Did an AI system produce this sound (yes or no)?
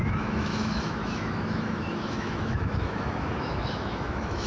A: yes